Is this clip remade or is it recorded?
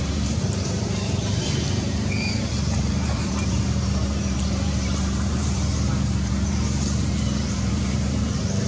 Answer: remade